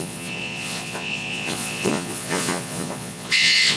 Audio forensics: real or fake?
fake